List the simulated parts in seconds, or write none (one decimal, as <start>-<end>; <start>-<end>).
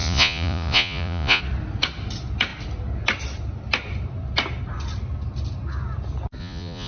0.0-1.4; 6.4-6.9